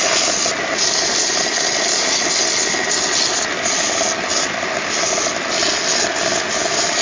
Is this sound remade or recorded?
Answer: recorded